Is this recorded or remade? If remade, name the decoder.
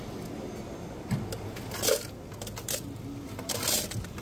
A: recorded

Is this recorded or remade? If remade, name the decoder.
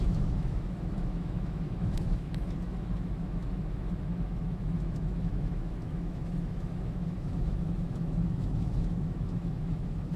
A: remade, autoencoder, DAC-VAE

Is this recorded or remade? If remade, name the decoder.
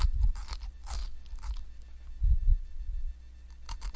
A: recorded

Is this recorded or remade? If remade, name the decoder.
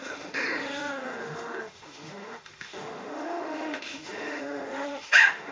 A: remade, autoencoder, DAC-VAE